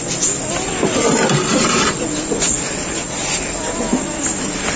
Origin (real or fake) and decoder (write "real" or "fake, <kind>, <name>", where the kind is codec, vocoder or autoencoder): real